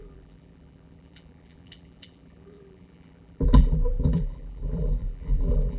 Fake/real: fake